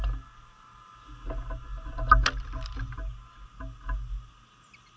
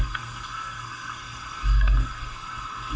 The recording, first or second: first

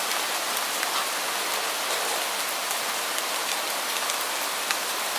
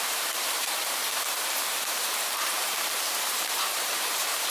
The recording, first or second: first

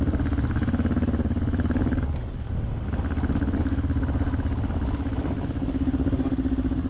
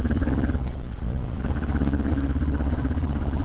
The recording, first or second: first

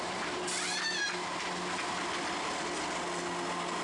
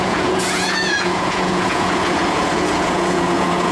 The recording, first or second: first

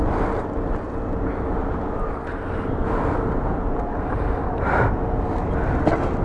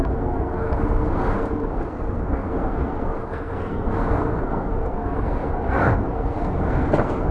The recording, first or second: first